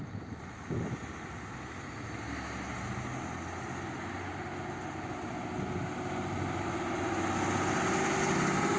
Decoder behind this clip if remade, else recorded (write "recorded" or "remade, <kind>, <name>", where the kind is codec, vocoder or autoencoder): recorded